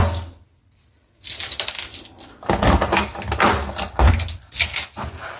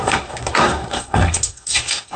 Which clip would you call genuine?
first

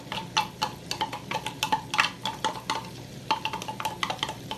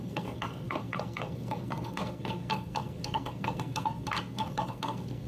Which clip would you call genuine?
first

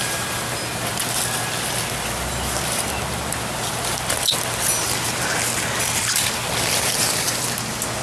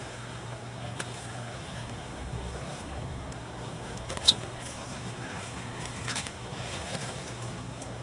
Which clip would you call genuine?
first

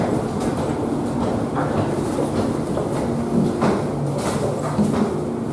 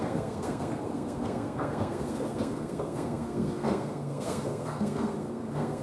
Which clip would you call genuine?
first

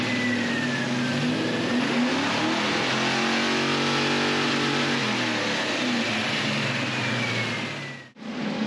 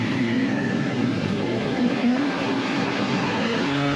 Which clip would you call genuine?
first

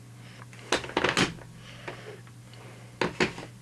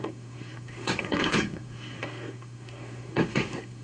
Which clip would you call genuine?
first